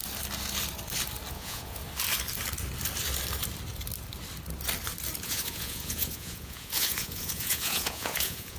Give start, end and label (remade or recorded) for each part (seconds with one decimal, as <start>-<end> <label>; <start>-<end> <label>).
0.0-1.3 recorded; 1.3-1.8 remade; 1.8-5.2 recorded; 5.2-8.6 remade